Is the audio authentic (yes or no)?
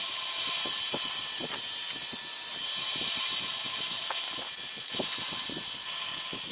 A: yes